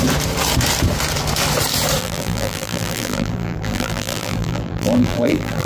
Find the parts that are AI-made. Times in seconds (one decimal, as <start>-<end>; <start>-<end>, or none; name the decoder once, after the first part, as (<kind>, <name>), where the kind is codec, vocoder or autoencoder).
2.0-5.7 (vocoder, BigVGAN v2)